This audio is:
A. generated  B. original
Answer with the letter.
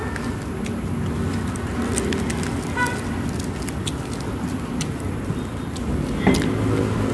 B